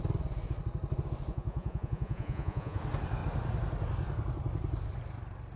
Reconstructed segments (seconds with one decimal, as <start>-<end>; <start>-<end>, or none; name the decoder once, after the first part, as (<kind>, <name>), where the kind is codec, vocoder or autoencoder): 1.3-2.8 (vocoder, Vocos)